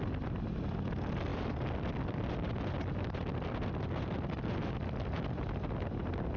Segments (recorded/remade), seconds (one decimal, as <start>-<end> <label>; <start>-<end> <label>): 0.0-6.4 recorded